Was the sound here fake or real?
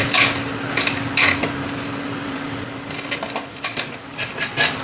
real